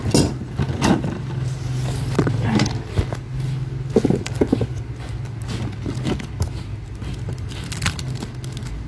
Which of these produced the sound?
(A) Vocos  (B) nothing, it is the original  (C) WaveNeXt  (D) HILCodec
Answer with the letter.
B